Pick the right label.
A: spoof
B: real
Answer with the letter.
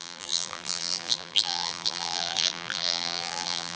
A